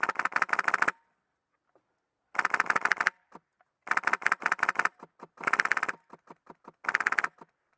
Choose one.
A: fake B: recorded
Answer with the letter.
B